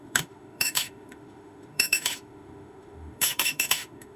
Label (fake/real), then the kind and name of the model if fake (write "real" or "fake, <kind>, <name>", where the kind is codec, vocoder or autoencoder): fake, autoencoder, DAC-VAE